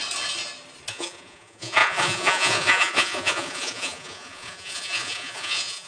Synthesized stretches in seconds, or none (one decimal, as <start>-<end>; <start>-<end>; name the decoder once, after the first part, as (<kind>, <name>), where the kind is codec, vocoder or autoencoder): 0.9-5.9 (vocoder, Vocos)